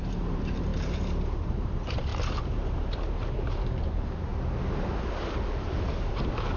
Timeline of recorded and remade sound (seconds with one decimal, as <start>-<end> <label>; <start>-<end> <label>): 0.0-2.1 remade; 2.1-3.5 recorded; 3.5-4.3 remade; 4.3-5.1 recorded; 5.1-6.6 remade